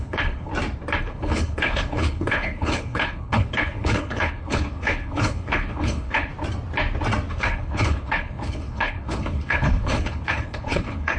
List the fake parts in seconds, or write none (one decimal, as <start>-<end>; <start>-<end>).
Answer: 0.0-0.5; 1.0-6.3; 7.3-11.2